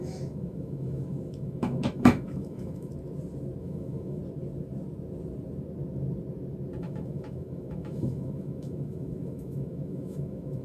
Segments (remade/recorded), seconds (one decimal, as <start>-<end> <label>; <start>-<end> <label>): 0.0-2.9 remade; 2.9-3.6 recorded; 3.6-4.2 remade; 4.2-6.8 recorded; 6.8-10.6 remade